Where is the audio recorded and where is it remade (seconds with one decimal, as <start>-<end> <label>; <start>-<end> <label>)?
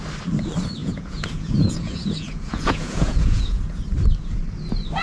0.0-0.8 recorded; 0.8-3.8 remade; 3.8-5.0 recorded